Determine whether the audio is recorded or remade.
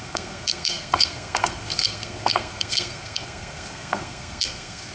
remade